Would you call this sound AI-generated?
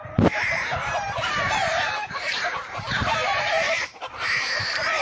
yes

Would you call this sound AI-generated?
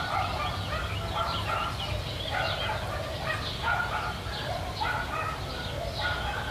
no